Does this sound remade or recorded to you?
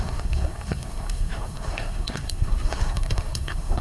remade